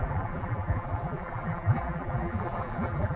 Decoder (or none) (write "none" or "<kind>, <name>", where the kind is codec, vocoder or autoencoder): vocoder, BigVGAN v2